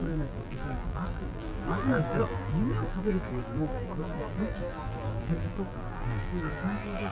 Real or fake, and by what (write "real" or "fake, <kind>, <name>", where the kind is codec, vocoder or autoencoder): fake, vocoder, BigVGAN v2